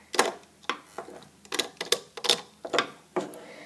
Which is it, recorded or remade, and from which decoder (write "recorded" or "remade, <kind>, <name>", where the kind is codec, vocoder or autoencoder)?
recorded